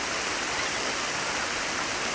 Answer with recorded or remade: recorded